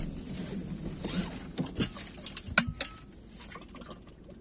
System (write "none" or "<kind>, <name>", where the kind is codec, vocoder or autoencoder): none